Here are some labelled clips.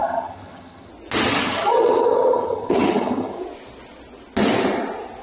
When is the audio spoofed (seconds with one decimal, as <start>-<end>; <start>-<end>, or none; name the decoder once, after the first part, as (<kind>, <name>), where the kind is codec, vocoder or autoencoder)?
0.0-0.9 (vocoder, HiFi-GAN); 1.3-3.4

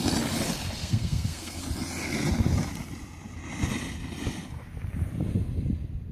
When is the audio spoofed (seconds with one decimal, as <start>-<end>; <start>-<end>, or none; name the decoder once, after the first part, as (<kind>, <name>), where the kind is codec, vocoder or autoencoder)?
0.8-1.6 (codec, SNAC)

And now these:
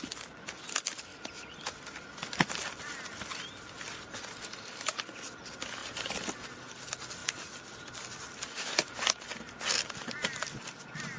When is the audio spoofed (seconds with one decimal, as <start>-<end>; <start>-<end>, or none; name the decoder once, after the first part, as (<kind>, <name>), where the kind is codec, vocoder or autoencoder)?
none

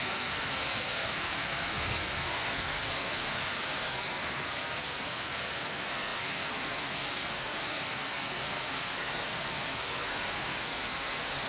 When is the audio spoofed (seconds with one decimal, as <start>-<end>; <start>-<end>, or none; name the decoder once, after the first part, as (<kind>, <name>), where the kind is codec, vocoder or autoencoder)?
0.0-11.5 (codec, SNAC)

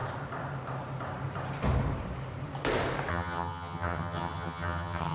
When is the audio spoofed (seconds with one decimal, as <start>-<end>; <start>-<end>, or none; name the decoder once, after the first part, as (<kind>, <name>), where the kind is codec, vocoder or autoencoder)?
3.1-5.1 (vocoder, HiFi-GAN)